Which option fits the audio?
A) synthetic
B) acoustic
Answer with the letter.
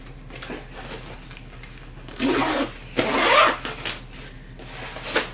B